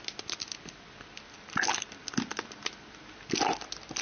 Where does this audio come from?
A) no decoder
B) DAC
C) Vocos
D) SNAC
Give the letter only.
A